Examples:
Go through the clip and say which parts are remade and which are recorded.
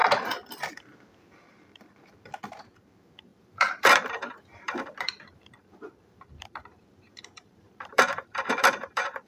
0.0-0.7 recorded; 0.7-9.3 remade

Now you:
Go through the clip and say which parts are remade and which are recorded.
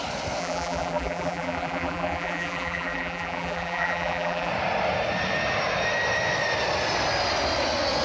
0.0-0.4 recorded; 0.4-4.5 remade; 4.5-8.0 recorded